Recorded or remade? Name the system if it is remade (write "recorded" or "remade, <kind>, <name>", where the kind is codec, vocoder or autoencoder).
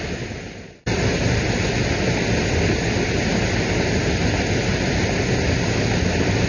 recorded